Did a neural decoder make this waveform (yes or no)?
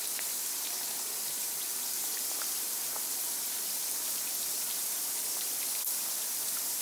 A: yes